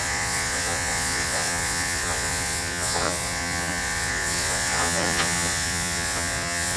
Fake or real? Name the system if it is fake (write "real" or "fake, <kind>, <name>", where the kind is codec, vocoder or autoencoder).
fake, vocoder, Vocos